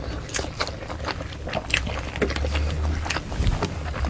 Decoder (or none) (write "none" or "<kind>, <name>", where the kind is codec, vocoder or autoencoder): none